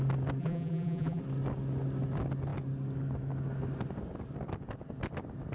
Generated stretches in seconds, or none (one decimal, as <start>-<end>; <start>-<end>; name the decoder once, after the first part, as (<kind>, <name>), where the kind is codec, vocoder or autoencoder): 0.4-1.2 (vocoder, BigVGAN v2)